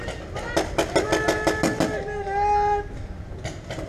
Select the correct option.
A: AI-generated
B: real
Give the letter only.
B